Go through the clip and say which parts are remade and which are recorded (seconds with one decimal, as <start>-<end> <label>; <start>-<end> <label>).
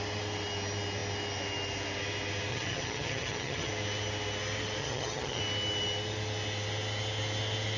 0.0-2.5 recorded; 2.5-3.7 remade; 3.7-4.8 recorded; 4.8-5.4 remade; 5.4-7.8 recorded